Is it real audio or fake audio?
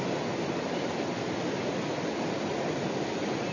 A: real